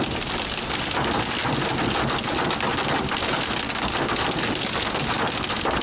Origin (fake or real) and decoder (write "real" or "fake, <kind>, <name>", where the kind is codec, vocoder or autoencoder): real